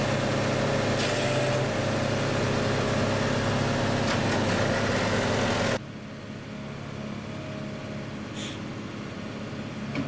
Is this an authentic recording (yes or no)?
yes